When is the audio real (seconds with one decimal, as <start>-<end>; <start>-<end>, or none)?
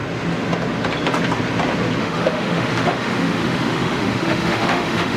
0.0-2.0